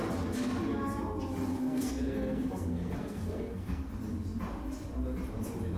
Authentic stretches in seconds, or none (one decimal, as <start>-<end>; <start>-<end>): 0.0-1.5; 3.9-5.8